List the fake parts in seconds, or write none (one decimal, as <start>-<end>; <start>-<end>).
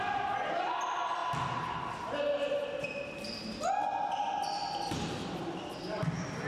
none